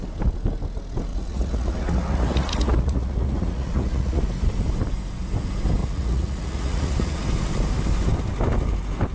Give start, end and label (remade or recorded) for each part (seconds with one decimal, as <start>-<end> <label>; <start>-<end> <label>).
0.0-1.1 recorded; 1.1-4.2 remade; 4.2-5.8 recorded; 5.8-7.2 remade; 7.2-9.1 recorded

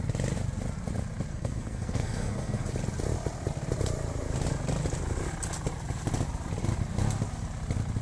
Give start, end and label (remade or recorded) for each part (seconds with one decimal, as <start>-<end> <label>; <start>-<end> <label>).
0.0-1.3 recorded; 1.3-2.7 remade; 2.7-8.0 recorded

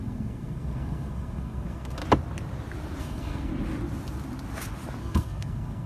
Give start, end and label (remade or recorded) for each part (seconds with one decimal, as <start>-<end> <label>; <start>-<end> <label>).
0.0-2.0 remade; 2.0-3.0 recorded; 3.0-3.5 remade; 3.5-5.0 recorded; 5.0-5.9 remade

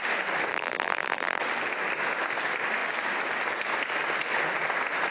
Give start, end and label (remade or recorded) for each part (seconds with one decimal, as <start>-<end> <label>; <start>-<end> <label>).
0.0-0.5 recorded; 0.5-1.4 remade; 1.4-5.1 recorded

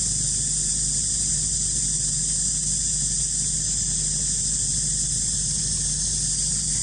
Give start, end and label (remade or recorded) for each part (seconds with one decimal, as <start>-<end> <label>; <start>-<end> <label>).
0.0-6.8 recorded

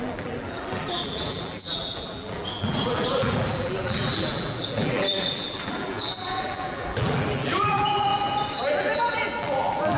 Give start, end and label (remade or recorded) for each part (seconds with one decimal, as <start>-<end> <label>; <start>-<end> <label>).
0.0-8.1 remade; 8.1-8.7 recorded; 8.7-10.0 remade

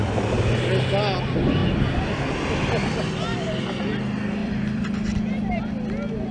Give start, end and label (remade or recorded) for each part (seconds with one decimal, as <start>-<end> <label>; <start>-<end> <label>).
0.0-4.4 recorded; 4.4-5.6 remade; 5.6-6.3 recorded